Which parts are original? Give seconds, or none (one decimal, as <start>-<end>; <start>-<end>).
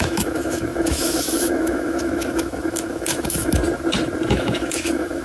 3.6-4.3